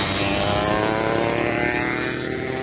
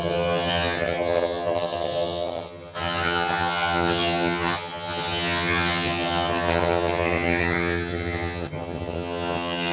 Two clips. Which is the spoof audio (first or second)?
second